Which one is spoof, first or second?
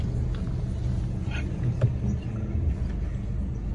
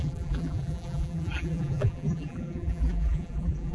second